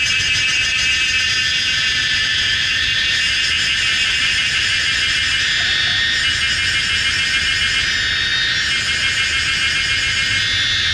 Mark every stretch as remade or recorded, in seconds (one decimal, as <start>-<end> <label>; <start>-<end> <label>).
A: 0.0-10.9 recorded